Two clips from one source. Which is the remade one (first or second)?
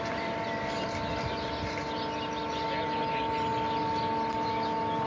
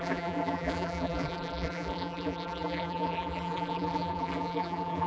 second